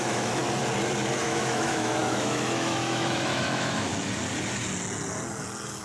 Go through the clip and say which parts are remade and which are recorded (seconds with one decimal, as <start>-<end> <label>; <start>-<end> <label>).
0.0-0.4 remade; 0.4-1.2 recorded; 1.2-3.9 remade; 3.9-5.8 recorded